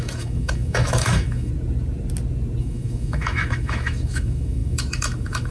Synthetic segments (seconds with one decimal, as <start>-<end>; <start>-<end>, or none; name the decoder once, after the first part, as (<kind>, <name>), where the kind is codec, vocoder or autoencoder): 0.0-1.5 (autoencoder, DAC-VAE); 2.6-5.5

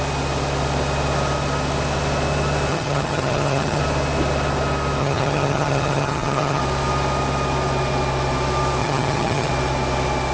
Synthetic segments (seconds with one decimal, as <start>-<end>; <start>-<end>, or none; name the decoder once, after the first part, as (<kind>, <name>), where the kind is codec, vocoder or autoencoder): 2.7-3.8 (vocoder, HiFi-GAN); 5.0-6.6; 8.8-9.5

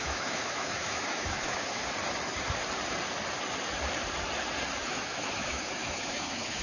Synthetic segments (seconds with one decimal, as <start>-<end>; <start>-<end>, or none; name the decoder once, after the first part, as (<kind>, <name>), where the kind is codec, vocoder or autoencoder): 0.0-1.8 (autoencoder, DAC-VAE); 4.8-6.6

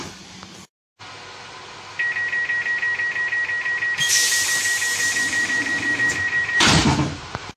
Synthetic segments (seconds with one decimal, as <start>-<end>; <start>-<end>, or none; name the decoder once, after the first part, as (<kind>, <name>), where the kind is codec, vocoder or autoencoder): 4.9-7.6 (vocoder, BigVGAN v2)

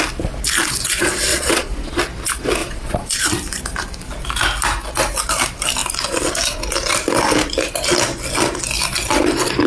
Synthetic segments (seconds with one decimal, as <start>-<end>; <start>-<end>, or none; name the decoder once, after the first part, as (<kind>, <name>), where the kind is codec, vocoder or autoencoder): 1.3-2.0 (vocoder, Vocos); 2.6-3.2

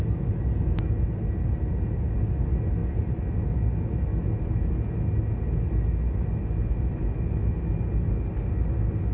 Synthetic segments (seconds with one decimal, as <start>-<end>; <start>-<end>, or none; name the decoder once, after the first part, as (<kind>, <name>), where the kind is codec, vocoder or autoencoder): none

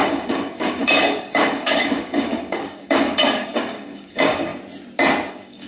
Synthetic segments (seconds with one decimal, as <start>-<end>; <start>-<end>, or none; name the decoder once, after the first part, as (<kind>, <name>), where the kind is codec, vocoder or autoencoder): 0.0-4.5 (codec, DAC); 5.3-5.7